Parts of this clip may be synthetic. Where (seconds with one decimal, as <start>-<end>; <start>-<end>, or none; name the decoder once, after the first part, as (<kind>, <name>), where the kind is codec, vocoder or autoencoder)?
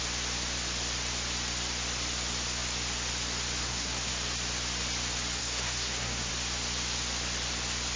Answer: 3.6-4.1 (codec, SNAC); 5.4-6.3